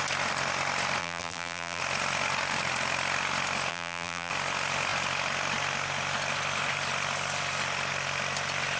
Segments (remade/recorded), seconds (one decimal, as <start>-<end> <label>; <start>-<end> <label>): 0.0-1.0 recorded; 1.0-1.8 remade; 1.8-3.7 recorded; 3.7-4.3 remade; 4.3-8.8 recorded